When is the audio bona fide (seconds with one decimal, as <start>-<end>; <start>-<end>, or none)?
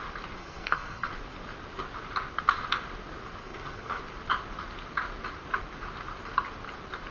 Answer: 0.0-0.4; 1.1-3.4; 4.0-7.1